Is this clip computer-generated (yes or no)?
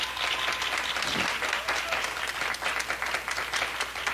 yes